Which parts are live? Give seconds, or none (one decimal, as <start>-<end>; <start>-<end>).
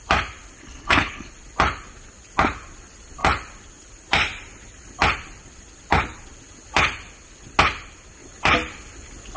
0.0-0.6; 1.3-9.4